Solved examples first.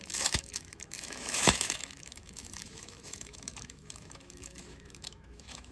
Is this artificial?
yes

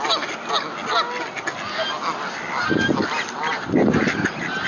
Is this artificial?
no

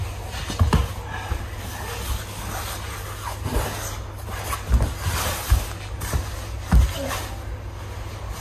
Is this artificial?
no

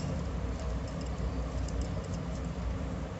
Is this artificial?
yes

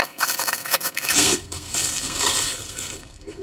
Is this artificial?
yes